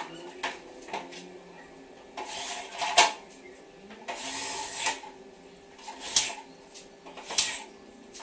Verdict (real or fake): real